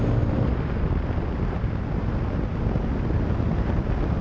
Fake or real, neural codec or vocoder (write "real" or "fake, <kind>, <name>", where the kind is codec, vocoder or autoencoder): real